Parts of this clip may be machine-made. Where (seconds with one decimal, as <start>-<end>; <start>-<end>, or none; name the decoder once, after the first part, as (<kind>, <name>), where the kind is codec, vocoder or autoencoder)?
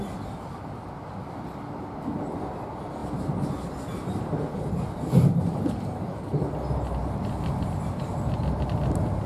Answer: none